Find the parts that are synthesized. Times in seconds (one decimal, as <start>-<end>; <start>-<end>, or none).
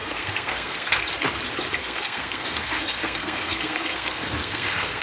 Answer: 0.0-1.0; 1.8-5.0